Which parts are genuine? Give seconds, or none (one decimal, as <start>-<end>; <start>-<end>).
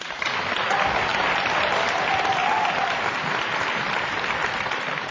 0.0-5.1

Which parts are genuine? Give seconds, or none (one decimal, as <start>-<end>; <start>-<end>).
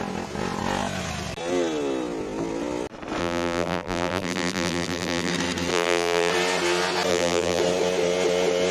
0.0-3.2; 5.3-5.7; 6.3-7.1; 7.6-8.7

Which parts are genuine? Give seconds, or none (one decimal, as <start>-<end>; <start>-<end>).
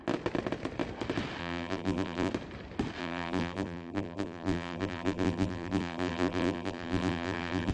0.0-1.4; 2.3-3.0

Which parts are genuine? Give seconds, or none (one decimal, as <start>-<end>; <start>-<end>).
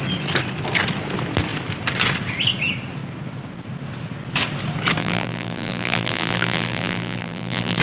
0.0-5.0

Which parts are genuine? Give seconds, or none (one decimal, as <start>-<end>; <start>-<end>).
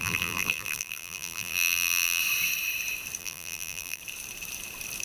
2.2-3.2; 4.0-5.0